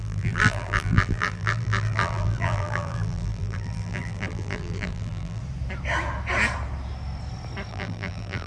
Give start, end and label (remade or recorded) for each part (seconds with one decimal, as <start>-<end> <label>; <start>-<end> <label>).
0.0-5.4 remade; 5.4-7.7 recorded; 7.7-8.5 remade